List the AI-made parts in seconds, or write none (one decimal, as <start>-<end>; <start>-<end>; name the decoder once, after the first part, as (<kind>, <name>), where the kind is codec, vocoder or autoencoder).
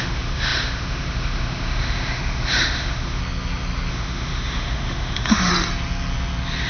0.0-3.2 (autoencoder, DAC-VAE); 3.9-5.5